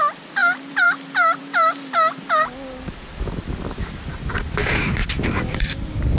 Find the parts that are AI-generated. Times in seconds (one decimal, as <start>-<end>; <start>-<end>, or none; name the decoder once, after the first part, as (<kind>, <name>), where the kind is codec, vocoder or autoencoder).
0.4-3.6 (vocoder, BigVGAN v2); 5.0-6.2